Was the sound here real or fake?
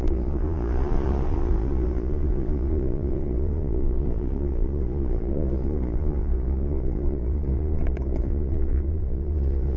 fake